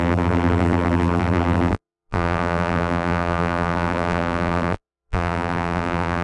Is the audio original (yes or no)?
no